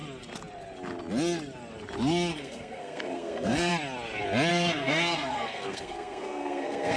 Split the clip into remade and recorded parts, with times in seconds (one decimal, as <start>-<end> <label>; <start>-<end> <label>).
0.0-2.3 recorded; 2.3-3.7 remade; 3.7-4.5 recorded; 4.5-7.0 remade